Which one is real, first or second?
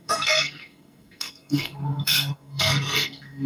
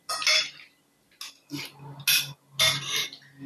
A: second